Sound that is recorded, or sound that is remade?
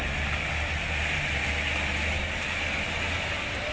recorded